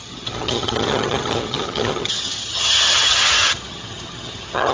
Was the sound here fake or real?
fake